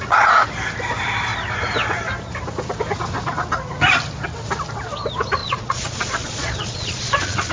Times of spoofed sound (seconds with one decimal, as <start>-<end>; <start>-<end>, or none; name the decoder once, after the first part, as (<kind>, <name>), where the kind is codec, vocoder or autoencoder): 5.4-7.5 (vocoder, Vocos)